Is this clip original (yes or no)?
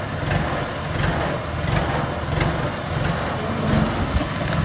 yes